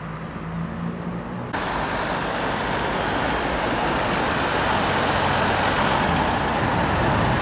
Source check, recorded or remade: recorded